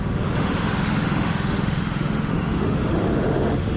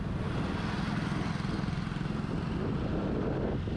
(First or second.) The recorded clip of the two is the second